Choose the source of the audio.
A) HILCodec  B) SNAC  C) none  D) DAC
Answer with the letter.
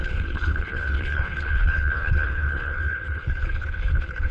A